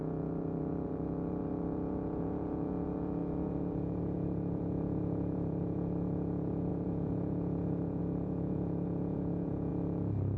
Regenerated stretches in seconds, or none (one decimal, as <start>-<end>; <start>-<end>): 0.0-9.7